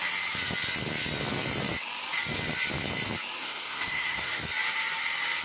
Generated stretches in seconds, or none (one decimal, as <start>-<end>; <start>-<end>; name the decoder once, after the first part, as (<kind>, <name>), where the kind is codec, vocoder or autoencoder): 3.4-4.4 (codec, SNAC)